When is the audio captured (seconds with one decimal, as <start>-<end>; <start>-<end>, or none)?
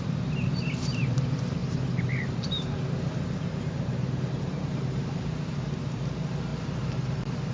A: 6.5-7.5